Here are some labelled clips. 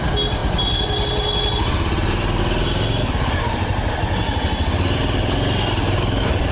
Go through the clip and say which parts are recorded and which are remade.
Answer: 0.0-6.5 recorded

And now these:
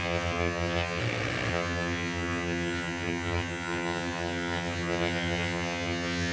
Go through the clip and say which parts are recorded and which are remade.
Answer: 0.0-1.0 remade; 1.0-1.5 recorded; 1.5-6.3 remade

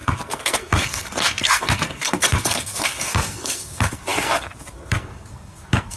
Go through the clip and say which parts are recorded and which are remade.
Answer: 0.0-6.0 remade

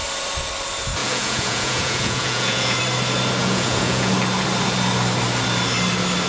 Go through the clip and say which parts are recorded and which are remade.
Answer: 0.0-1.0 recorded; 1.0-2.8 remade; 2.8-3.4 recorded; 3.4-4.1 remade; 4.1-6.3 recorded

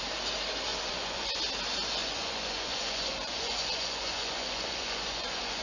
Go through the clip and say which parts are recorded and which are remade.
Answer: 0.0-0.7 recorded; 0.7-1.4 remade; 1.4-2.0 recorded; 2.0-5.6 remade

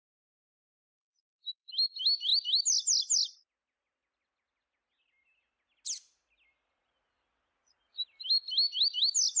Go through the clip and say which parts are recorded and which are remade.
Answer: 0.0-9.4 recorded

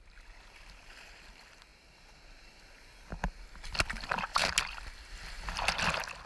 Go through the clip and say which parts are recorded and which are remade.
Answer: 0.0-6.3 recorded